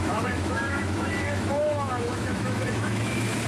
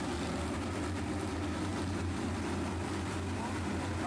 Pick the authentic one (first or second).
second